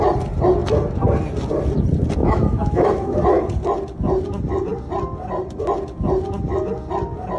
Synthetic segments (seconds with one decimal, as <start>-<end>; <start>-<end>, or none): 2.2-3.2